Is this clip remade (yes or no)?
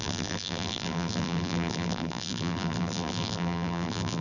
yes